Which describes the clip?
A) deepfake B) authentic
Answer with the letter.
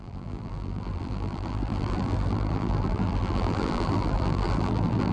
A